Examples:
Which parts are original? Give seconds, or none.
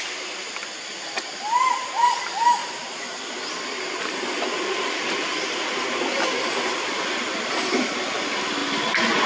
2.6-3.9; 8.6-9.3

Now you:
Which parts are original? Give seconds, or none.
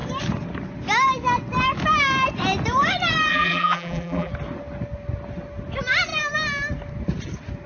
0.0-3.3; 4.3-7.7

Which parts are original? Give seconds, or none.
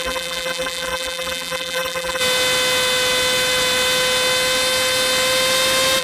2.2-6.0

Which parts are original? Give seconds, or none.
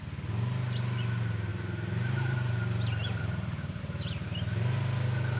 0.0-1.5; 3.8-5.4